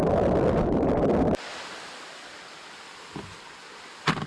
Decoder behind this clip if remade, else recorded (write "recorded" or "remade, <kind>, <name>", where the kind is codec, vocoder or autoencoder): recorded